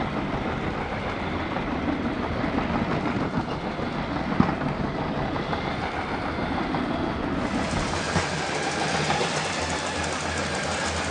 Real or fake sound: real